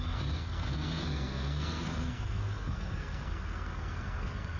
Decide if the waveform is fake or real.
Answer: fake